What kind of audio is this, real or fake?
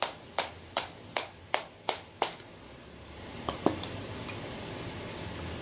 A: fake